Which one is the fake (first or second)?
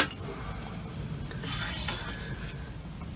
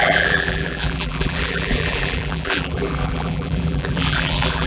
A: second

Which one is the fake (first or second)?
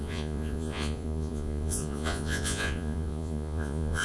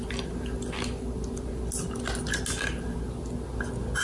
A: first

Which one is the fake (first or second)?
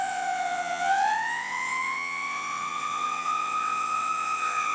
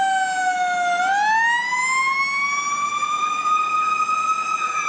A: first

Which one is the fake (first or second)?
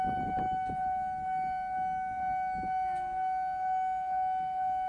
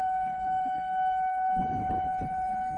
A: second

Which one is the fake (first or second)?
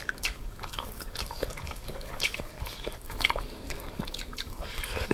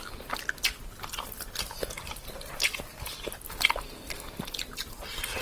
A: first